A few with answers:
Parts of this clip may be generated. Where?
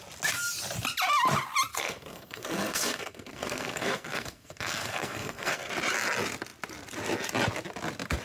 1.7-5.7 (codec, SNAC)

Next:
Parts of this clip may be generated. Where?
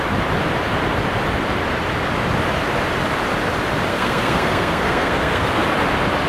3.9-5.5 (codec, SNAC)